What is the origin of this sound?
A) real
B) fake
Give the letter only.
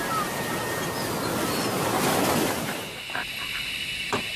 A